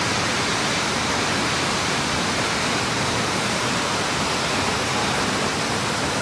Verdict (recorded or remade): remade